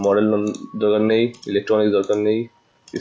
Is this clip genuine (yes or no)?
yes